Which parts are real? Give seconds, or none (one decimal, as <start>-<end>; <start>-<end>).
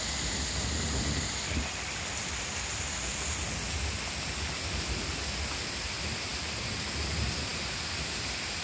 0.0-8.6